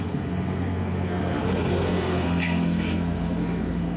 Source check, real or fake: fake